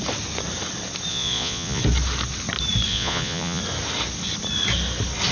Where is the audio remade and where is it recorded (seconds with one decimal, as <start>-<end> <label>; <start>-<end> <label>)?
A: 0.0-1.1 recorded; 1.1-1.8 remade; 1.8-2.9 recorded; 2.9-3.6 remade; 3.6-5.3 recorded